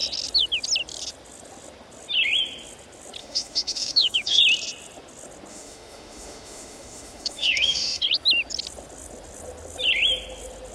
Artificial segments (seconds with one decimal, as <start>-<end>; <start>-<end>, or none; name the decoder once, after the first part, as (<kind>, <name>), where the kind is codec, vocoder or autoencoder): 3.2-4.4 (autoencoder, DAC-VAE); 5.5-8.0